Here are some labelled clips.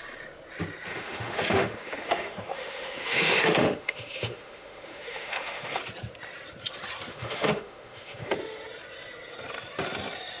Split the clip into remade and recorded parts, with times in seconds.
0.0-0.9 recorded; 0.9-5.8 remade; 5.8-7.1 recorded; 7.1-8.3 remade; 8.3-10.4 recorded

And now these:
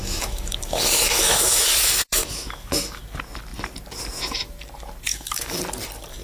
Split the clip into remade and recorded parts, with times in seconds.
0.0-3.0 remade; 3.0-5.1 recorded; 5.1-5.6 remade; 5.6-6.2 recorded

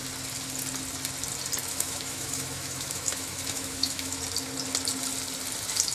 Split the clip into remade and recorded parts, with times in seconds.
0.0-1.6 recorded; 1.6-4.2 remade; 4.2-5.9 recorded

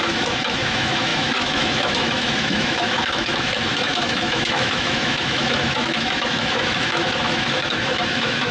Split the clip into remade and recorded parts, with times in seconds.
0.0-8.5 remade